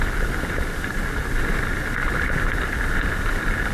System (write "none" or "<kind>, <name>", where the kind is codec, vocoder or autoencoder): none